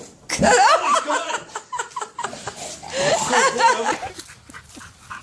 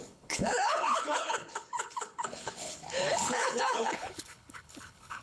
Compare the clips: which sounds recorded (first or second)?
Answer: first